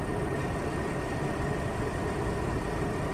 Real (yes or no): yes